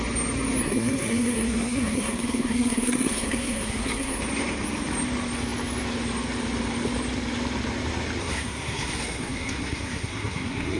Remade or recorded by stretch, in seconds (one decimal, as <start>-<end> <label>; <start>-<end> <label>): 0.0-0.6 recorded; 0.6-4.2 remade; 4.2-8.2 recorded; 8.2-10.8 remade